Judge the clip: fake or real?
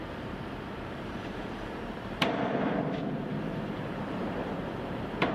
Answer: fake